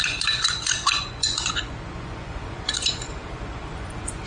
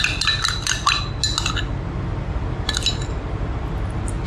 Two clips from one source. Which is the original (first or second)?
second